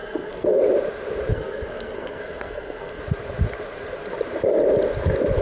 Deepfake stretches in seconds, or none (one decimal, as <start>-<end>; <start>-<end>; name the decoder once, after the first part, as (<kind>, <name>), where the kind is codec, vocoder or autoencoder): 0.0-0.6 (codec, SNAC); 1.3-3.0